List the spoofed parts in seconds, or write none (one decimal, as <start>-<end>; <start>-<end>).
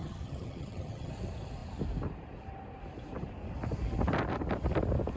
0.0-1.1